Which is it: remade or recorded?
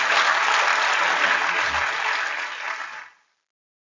recorded